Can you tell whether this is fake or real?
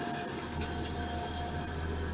real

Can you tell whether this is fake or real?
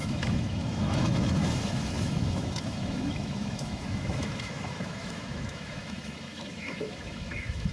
fake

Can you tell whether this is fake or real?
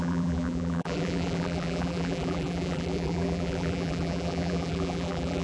fake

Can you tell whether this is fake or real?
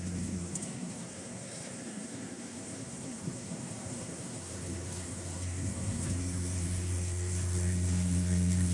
fake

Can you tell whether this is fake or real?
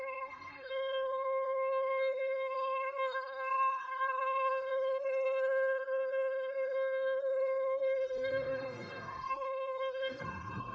fake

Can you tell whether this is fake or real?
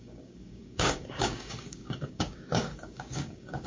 fake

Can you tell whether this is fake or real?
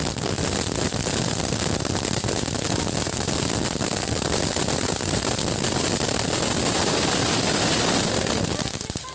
real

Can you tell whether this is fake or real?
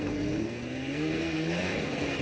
fake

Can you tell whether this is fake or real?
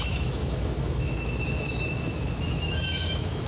fake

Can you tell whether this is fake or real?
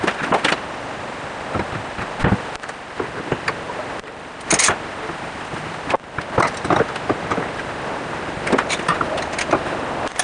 real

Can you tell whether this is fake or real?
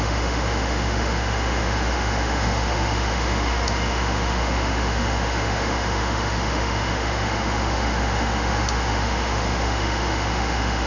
fake